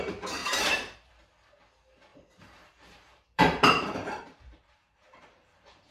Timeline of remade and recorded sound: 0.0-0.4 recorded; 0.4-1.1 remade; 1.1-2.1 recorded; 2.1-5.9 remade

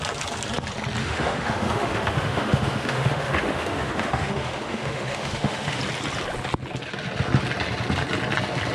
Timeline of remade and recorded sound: 0.0-1.0 recorded; 1.0-5.8 remade; 5.8-8.7 recorded

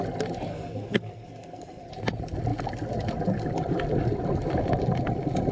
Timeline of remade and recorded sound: 0.0-0.5 recorded; 0.5-1.9 remade; 1.9-5.5 recorded